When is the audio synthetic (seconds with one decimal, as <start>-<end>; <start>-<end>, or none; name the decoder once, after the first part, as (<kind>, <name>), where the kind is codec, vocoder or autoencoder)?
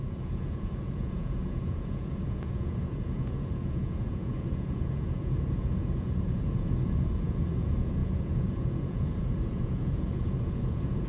0.0-11.1 (vocoder, Vocos)